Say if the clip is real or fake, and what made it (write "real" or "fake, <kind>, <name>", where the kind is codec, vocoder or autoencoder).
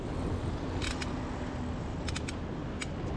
real